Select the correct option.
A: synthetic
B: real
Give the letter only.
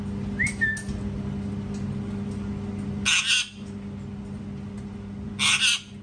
B